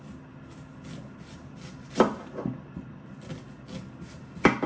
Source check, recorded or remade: recorded